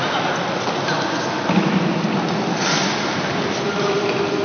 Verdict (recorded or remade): recorded